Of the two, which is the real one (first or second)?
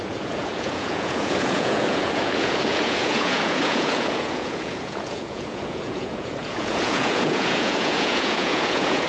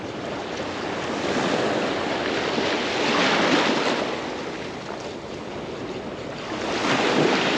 second